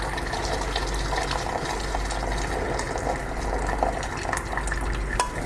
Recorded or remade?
recorded